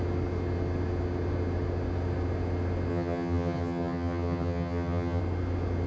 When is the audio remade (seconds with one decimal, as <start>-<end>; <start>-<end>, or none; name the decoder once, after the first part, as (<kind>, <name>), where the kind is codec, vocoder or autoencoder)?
2.9-5.2 (vocoder, HiFi-GAN)